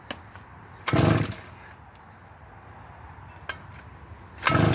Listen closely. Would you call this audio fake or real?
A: real